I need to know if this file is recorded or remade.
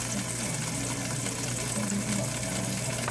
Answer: recorded